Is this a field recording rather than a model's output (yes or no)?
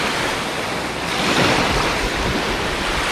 yes